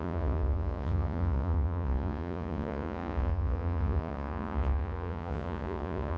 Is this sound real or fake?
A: fake